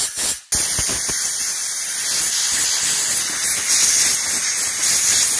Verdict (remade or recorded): recorded